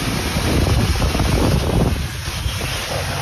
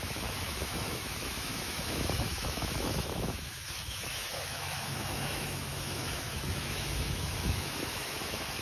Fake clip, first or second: second